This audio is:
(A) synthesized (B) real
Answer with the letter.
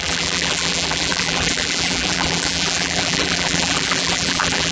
A